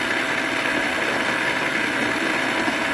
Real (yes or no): yes